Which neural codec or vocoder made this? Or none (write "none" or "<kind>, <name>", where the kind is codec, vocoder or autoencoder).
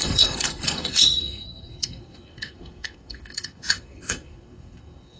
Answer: codec, SNAC